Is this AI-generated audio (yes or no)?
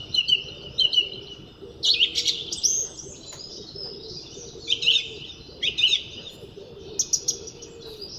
no